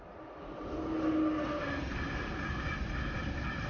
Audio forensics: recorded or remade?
recorded